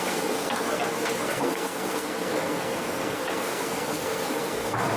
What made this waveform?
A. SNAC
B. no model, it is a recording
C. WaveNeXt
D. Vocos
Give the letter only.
A